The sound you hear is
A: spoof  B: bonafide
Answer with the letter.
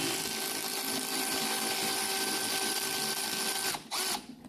B